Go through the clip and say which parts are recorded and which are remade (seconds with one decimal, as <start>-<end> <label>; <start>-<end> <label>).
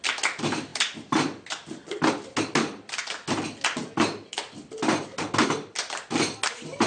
0.0-6.9 recorded